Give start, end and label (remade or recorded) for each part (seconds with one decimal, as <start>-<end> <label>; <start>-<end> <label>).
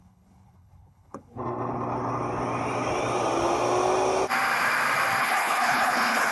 0.0-1.4 remade; 1.4-5.2 recorded; 5.2-6.3 remade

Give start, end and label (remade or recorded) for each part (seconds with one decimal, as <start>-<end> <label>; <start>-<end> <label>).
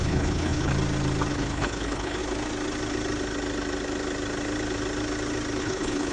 0.0-0.7 remade; 0.7-1.3 recorded; 1.3-2.2 remade; 2.2-5.6 recorded; 5.6-6.1 remade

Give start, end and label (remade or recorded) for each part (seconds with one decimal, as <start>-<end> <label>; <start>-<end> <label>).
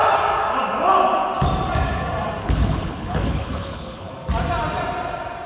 0.0-2.4 recorded; 2.4-4.1 remade; 4.1-5.5 recorded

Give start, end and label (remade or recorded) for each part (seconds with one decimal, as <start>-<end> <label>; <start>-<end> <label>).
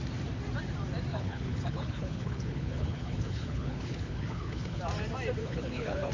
0.0-1.1 recorded; 1.1-4.8 remade; 4.8-5.4 recorded; 5.4-6.1 remade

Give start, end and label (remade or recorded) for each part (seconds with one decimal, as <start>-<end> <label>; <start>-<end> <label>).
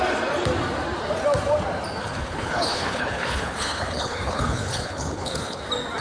0.0-2.0 recorded; 2.0-5.6 remade; 5.6-6.0 recorded